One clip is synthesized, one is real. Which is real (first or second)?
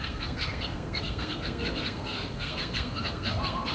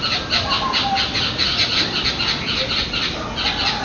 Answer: second